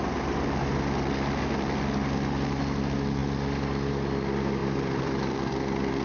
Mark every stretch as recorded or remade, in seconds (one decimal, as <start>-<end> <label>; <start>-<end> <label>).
0.0-4.6 recorded; 4.6-5.5 remade; 5.5-6.0 recorded